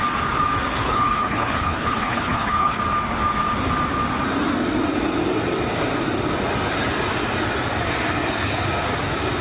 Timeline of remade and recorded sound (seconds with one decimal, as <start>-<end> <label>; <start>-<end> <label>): 0.0-0.8 recorded; 0.8-2.8 remade; 2.8-9.4 recorded